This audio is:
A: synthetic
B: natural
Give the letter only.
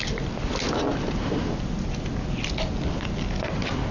B